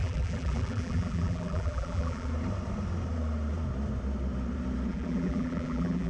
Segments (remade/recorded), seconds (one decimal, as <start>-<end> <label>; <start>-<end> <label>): 0.0-2.3 remade; 2.3-4.9 recorded; 4.9-6.1 remade